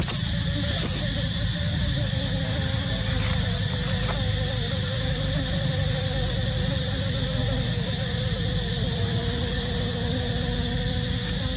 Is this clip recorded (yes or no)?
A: yes